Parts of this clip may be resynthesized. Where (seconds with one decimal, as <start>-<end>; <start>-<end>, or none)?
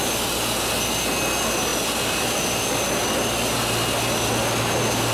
none